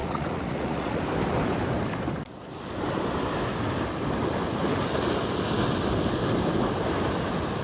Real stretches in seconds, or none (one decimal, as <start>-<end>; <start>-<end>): 1.0-7.6